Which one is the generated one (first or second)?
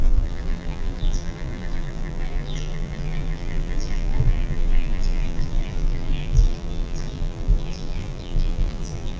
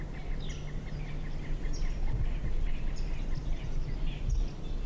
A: first